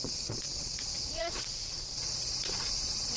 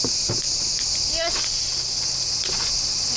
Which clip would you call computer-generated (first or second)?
first